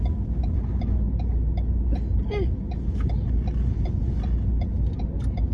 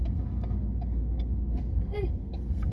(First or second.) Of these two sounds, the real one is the first